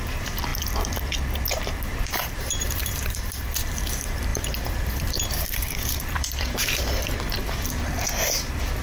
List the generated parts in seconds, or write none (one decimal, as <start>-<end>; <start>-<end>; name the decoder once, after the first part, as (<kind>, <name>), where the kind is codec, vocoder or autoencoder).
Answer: 0.0-0.5 (vocoder, BigVGAN v2); 1.5-8.8